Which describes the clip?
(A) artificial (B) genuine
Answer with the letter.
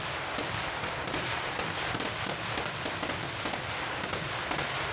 B